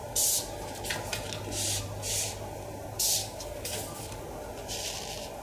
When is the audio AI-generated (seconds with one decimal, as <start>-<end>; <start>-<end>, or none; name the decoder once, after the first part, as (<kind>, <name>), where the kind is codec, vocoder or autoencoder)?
3.2-4.2 (codec, DAC)